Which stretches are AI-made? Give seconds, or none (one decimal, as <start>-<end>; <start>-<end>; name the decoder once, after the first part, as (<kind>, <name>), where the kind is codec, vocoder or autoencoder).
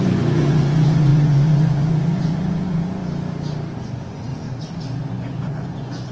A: 0.0-3.0 (vocoder, Vocos); 3.8-4.3; 5.1-6.1